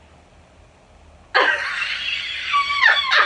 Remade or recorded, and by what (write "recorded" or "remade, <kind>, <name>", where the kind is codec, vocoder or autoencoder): recorded